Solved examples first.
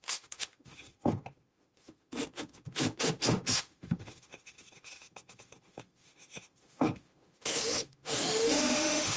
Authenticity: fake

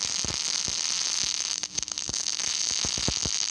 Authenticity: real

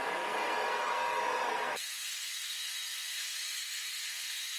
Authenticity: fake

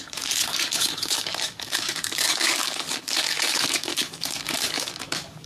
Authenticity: fake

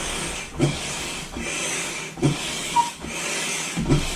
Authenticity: fake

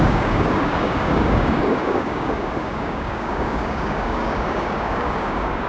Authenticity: fake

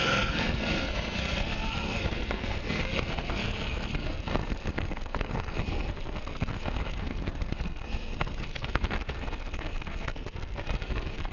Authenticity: fake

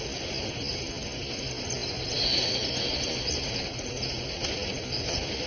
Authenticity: real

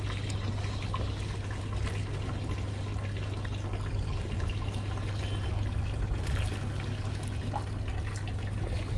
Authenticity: real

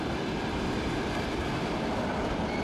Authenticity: fake